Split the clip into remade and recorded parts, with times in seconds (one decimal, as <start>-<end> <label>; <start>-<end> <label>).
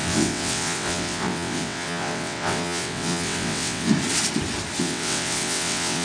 0.0-3.9 remade; 3.9-4.8 recorded; 4.8-6.0 remade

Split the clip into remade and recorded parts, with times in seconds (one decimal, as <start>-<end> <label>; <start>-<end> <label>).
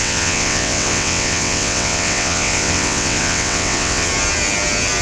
0.0-4.1 remade; 4.1-5.0 recorded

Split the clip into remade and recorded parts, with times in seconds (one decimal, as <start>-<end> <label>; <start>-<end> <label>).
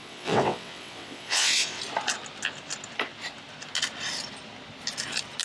0.0-1.8 remade; 1.8-5.4 recorded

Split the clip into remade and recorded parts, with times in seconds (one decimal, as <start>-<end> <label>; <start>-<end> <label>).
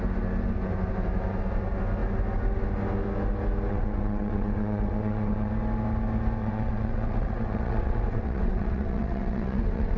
0.0-3.7 recorded; 3.7-5.5 remade; 5.5-6.4 recorded; 6.4-10.0 remade